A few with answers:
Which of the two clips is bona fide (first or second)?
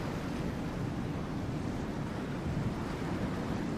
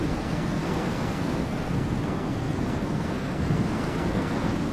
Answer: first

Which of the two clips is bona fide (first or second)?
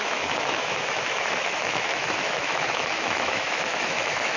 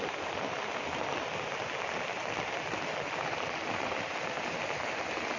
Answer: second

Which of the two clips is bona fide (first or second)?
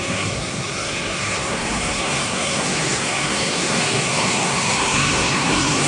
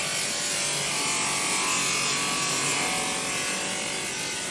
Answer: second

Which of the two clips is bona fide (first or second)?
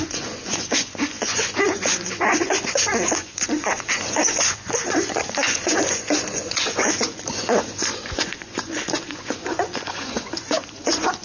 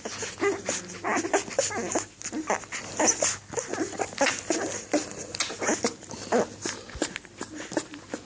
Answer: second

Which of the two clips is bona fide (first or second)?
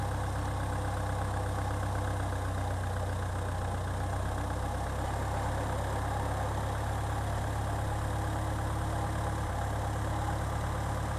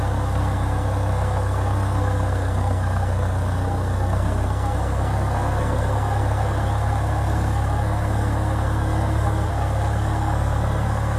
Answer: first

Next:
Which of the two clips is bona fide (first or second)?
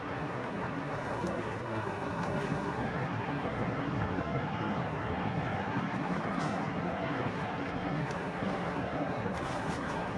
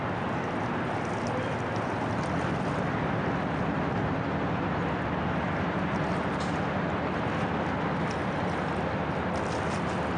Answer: second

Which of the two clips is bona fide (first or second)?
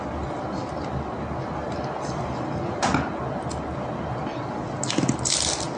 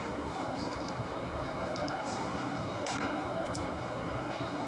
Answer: first